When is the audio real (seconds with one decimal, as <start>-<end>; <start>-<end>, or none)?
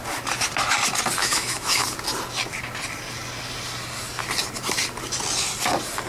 0.0-1.2; 1.8-6.1